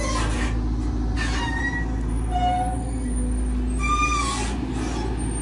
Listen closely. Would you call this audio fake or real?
real